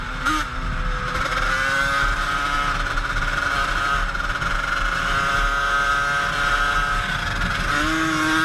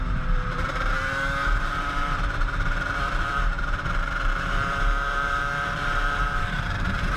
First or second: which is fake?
second